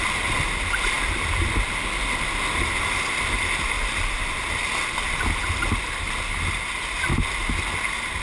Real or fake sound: real